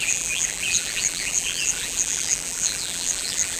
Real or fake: fake